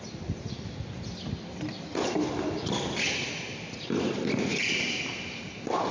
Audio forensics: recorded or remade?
recorded